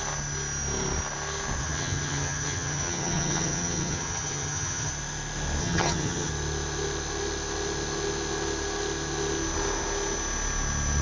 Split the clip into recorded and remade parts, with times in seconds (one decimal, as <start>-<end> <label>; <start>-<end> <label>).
0.0-1.6 recorded; 1.6-4.9 remade; 4.9-5.6 recorded; 5.6-6.3 remade; 6.3-11.0 recorded